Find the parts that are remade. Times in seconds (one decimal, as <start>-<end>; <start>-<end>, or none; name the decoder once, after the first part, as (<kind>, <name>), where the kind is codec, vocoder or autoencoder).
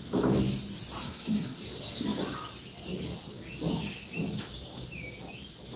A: 1.0-1.6 (codec, SNAC)